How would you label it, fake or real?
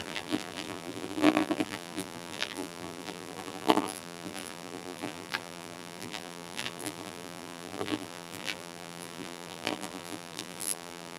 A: fake